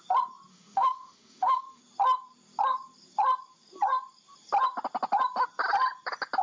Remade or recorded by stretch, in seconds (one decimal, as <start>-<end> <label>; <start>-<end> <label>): 0.0-0.5 recorded; 0.5-1.8 remade; 1.8-6.4 recorded